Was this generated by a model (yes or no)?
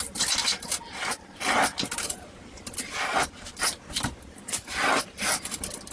no